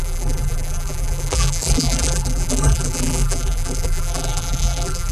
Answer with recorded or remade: remade